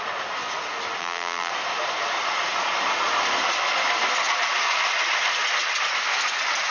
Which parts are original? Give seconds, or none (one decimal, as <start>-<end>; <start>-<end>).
0.0-1.0; 1.5-6.7